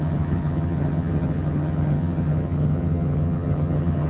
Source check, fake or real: fake